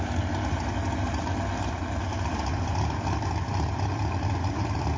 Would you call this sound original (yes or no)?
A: yes